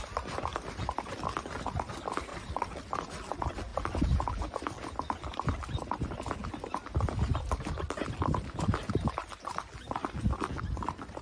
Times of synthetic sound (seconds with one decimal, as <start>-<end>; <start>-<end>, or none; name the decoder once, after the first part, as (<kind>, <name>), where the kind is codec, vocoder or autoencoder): 2.3-2.8 (vocoder, Vocos)